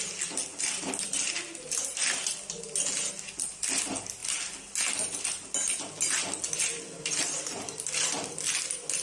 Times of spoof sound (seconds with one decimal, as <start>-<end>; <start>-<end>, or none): 0.5-1.4